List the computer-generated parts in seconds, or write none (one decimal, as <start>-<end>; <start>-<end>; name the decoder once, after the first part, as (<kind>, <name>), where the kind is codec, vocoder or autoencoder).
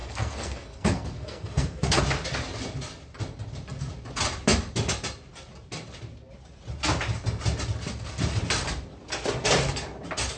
0.0-2.0 (codec, SNAC)